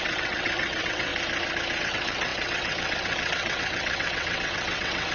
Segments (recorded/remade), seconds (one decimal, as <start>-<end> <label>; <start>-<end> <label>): 0.0-1.1 remade; 1.1-1.8 recorded; 1.8-5.1 remade